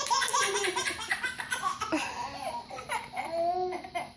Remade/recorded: recorded